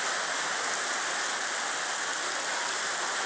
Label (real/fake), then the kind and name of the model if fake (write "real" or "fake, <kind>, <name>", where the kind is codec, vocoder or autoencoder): real